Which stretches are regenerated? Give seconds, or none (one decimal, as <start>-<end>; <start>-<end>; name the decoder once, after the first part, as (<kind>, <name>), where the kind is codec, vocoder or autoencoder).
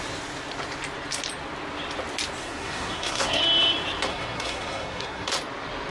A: 2.4-3.4 (codec, SNAC); 4.1-5.3